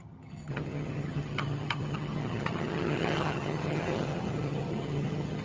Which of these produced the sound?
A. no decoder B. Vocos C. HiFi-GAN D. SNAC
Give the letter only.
C